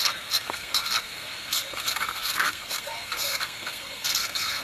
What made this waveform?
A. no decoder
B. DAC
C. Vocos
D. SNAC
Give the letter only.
D